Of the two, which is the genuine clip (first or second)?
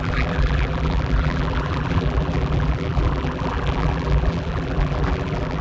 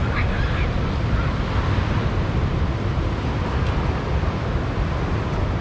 second